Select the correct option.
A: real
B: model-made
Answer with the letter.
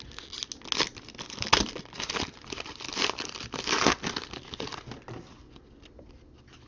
A